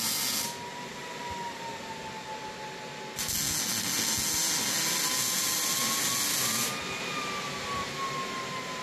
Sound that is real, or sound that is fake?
real